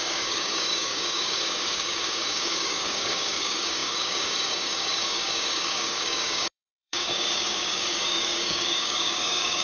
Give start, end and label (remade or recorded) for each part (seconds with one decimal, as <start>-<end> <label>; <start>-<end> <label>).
0.0-9.6 remade